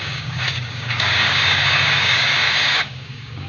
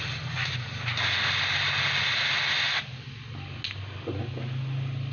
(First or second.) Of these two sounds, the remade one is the first